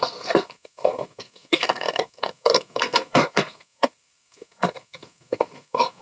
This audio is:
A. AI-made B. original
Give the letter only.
A